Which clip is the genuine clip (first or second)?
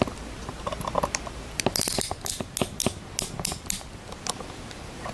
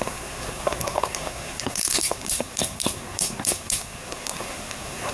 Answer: first